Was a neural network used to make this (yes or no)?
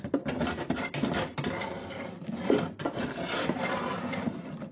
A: no